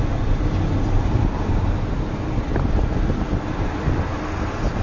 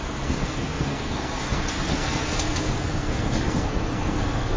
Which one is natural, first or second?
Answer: first